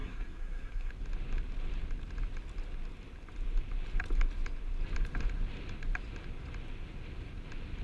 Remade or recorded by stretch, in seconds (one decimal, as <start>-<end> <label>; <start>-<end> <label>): 0.0-0.9 remade; 0.9-7.8 recorded